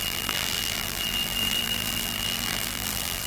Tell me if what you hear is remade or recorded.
remade